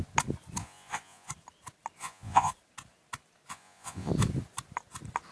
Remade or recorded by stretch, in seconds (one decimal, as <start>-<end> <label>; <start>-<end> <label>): 0.0-0.6 recorded; 0.6-1.3 remade; 1.3-2.0 recorded; 2.0-2.5 remade; 2.5-3.5 recorded; 3.5-4.1 remade; 4.1-5.3 recorded